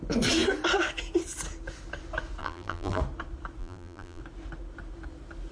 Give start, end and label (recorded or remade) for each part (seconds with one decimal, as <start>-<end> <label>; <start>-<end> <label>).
0.0-2.4 recorded; 2.4-3.0 remade; 3.0-3.6 recorded; 3.6-4.2 remade; 4.2-5.5 recorded